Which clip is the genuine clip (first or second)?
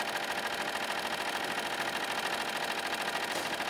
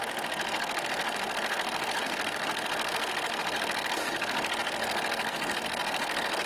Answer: first